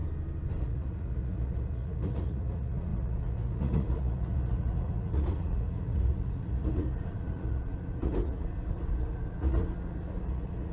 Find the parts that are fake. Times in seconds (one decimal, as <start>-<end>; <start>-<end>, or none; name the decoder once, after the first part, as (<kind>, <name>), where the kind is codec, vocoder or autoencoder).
0.6-10.7 (vocoder, Vocos)